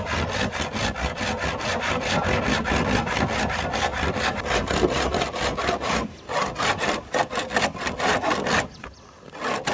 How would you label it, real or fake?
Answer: real